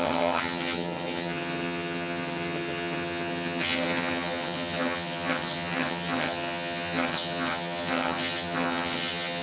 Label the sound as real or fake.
fake